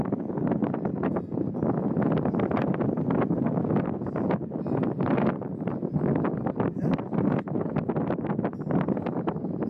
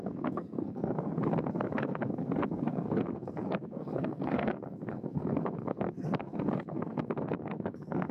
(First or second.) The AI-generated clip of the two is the second